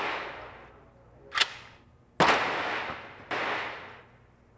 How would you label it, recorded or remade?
recorded